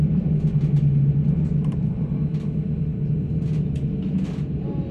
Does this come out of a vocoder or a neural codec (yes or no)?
no